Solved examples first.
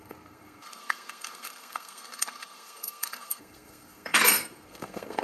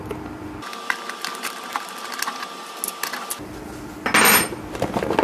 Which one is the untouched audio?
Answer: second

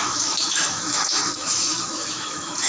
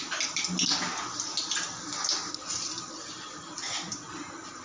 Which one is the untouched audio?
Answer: second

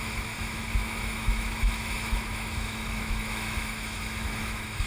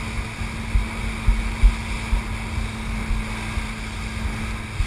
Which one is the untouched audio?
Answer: second